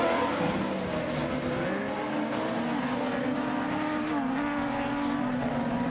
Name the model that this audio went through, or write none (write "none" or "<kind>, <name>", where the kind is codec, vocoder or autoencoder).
none